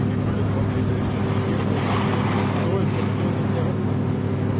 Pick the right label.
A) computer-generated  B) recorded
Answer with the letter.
B